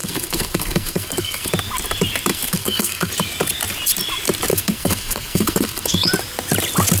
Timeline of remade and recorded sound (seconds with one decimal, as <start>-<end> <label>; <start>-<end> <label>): 0.0-1.5 remade; 1.5-2.3 recorded; 2.3-3.1 remade; 3.1-4.5 recorded; 4.5-6.1 remade; 6.1-7.0 recorded